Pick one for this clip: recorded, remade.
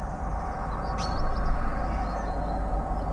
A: recorded